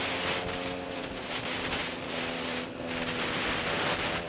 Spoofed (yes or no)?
no